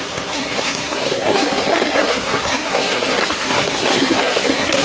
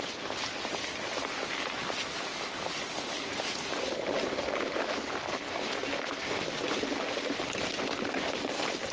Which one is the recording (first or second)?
second